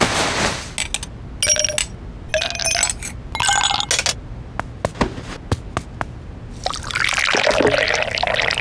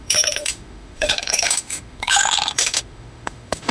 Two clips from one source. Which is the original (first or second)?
first